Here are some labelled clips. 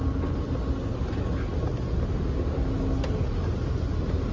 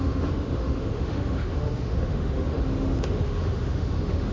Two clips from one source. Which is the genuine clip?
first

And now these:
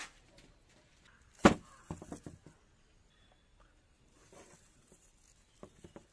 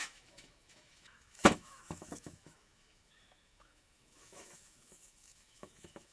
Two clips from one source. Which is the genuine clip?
first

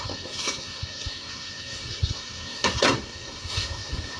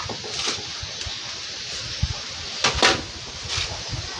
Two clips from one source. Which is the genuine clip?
second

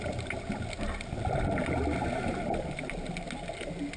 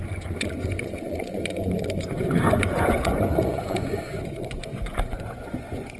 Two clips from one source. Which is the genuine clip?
first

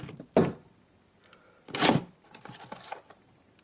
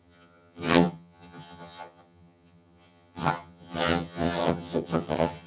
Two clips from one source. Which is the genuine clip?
first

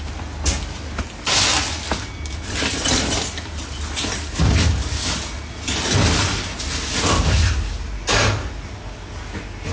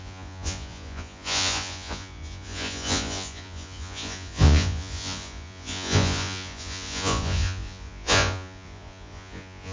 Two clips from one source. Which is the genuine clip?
first